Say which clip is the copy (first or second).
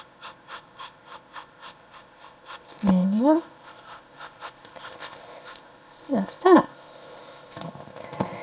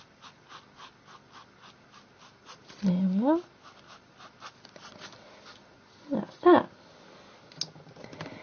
first